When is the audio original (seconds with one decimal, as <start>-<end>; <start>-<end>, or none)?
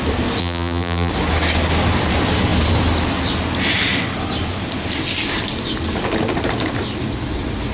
0.0-0.4; 1.1-7.7